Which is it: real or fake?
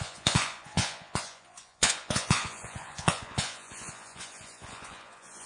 fake